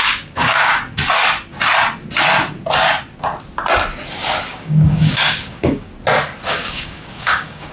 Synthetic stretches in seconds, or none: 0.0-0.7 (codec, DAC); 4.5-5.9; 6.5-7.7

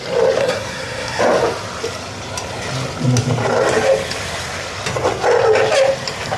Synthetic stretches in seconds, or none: 0.4-1.2 (codec, SNAC)

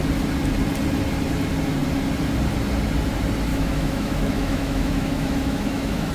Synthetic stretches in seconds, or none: 3.5-6.1 (autoencoder, DAC-VAE)

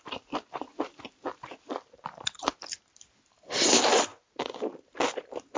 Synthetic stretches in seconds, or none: 4.1-4.6 (vocoder, Vocos)

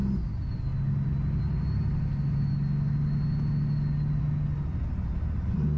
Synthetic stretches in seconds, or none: none

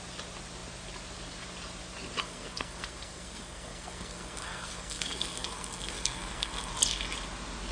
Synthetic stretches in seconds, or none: 2.2-6.7 (codec, SNAC)

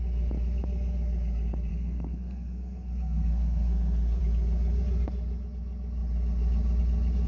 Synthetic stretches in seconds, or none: 1.7-4.2 (codec, SNAC)